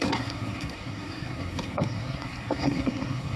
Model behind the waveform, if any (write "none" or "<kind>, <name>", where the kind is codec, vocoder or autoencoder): codec, SNAC